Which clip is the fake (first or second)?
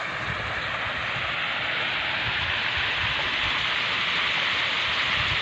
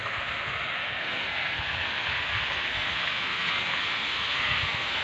second